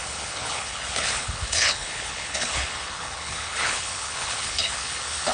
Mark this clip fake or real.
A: fake